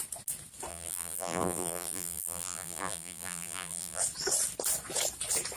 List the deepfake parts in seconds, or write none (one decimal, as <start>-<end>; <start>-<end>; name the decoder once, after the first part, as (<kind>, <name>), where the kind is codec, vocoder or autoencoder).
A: 0.7-4.0 (vocoder, BigVGAN v2)

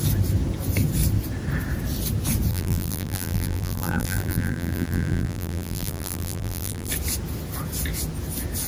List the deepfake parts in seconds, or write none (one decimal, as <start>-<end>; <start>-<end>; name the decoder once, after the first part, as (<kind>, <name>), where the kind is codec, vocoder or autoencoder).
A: 2.5-6.9 (vocoder, BigVGAN v2)

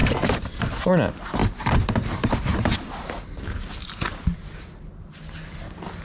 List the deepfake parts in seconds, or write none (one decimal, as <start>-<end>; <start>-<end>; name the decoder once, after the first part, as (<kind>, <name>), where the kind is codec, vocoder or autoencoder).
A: 0.0-0.6 (vocoder, BigVGAN v2); 1.4-4.0

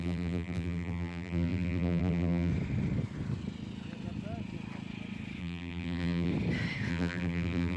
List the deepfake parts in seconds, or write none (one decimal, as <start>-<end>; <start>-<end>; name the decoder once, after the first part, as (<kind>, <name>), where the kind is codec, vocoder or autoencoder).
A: 0.0-2.5 (vocoder, BigVGAN v2); 5.4-6.3; 6.9-7.8

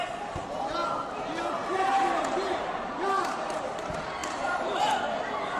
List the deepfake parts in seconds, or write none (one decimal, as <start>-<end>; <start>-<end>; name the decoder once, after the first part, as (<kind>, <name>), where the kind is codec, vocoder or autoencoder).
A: 1.6-3.6 (vocoder, BigVGAN v2); 4.2-4.8

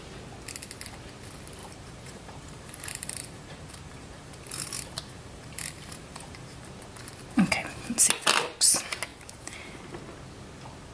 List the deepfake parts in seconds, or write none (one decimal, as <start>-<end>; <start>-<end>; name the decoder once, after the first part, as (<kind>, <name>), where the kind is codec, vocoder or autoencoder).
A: 1.6-6.7 (vocoder, BigVGAN v2); 9.1-9.8